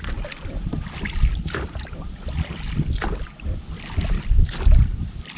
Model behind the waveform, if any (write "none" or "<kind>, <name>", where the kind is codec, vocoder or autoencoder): none